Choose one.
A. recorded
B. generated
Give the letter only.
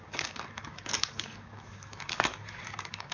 B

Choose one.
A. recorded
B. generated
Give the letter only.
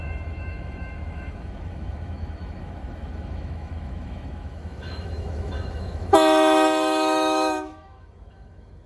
B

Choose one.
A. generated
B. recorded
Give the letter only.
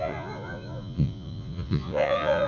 A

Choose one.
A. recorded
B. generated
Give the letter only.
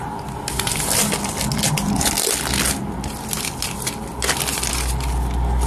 A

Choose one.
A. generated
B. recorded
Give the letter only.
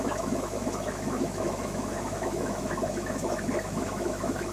A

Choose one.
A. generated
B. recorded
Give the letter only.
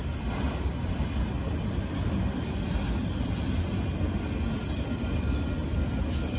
B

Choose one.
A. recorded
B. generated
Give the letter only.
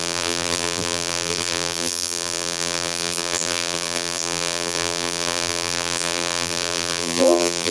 B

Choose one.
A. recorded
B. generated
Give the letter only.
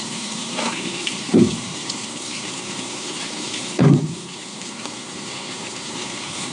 B